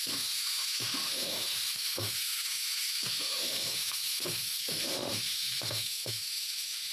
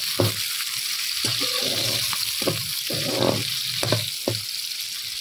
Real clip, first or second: second